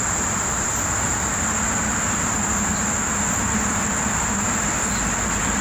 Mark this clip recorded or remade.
recorded